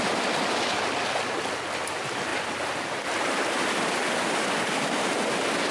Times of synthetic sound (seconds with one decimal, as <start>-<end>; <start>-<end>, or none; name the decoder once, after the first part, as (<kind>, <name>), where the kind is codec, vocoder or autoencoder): 2.3-4.6 (vocoder, BigVGAN v2)